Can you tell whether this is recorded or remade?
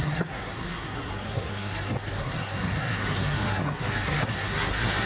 remade